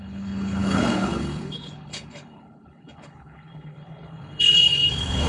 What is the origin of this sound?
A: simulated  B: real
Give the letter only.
A